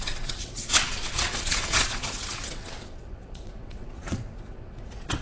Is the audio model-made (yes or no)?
yes